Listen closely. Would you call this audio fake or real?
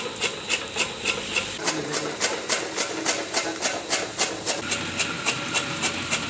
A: real